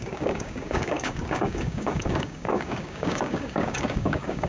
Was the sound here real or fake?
fake